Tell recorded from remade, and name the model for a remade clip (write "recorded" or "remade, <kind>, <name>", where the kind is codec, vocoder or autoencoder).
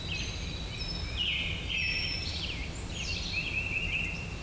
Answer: recorded